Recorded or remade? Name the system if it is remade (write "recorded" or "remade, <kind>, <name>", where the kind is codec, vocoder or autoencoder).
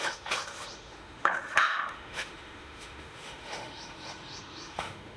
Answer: remade, autoencoder, DAC-VAE